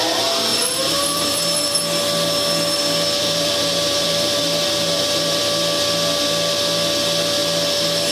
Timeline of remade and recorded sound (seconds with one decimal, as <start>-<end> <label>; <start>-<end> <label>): 0.0-0.5 recorded; 0.5-1.8 remade; 1.8-3.2 recorded; 3.2-5.4 remade; 5.4-8.1 recorded